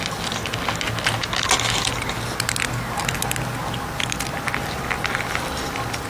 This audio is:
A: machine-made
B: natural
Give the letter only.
B